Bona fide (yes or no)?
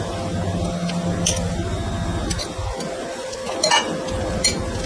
yes